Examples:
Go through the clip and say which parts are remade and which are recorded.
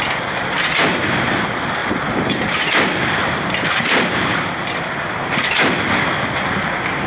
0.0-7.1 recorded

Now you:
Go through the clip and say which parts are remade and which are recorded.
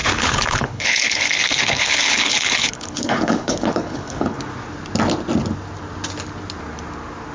0.0-4.4 remade; 4.4-7.3 recorded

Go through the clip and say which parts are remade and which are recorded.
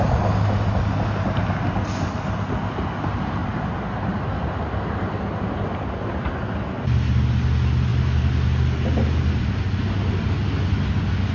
0.0-11.3 recorded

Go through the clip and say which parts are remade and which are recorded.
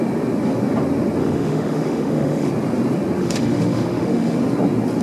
0.0-1.2 recorded; 1.2-2.5 remade; 2.5-3.2 recorded; 3.2-4.4 remade; 4.4-5.0 recorded